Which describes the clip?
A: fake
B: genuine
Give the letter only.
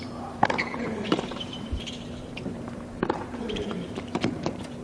A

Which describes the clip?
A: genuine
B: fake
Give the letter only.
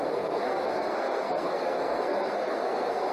B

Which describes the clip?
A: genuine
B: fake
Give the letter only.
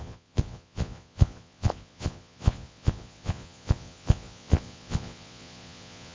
B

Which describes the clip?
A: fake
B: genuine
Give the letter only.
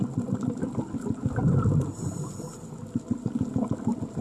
B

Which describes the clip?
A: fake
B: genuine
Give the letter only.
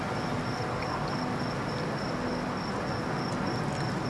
B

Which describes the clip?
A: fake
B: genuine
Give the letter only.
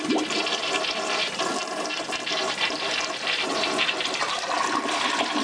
A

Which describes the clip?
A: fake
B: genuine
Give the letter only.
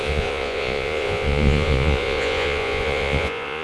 A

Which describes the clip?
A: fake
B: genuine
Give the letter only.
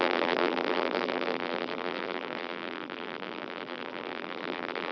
A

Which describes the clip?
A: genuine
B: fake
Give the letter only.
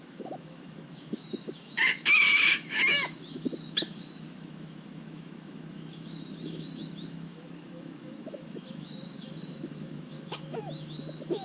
B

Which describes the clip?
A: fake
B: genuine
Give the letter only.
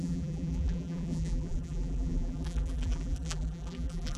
A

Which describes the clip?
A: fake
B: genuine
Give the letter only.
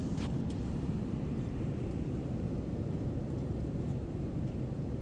B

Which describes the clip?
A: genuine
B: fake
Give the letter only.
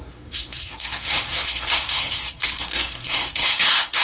B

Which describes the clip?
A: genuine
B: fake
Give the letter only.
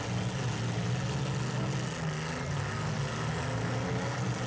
A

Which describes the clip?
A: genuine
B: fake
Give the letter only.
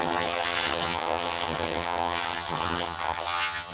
B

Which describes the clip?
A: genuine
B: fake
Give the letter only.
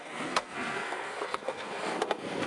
B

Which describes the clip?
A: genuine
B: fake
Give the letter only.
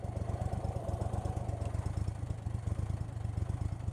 A